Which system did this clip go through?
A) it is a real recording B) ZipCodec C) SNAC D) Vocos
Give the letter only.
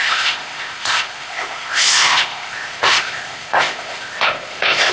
B